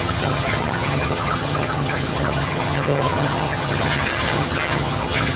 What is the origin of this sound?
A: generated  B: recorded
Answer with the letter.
A